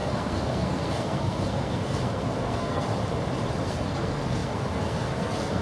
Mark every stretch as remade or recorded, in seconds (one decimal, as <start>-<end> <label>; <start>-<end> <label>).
0.0-2.9 remade; 2.9-3.6 recorded; 3.6-5.6 remade